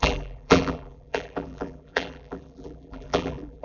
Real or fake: fake